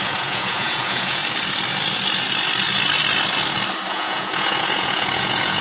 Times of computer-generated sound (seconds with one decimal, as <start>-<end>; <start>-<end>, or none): 0.0-1.2; 3.9-5.6